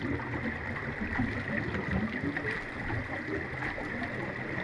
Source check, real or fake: real